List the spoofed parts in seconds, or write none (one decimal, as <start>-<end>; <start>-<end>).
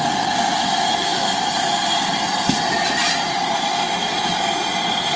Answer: none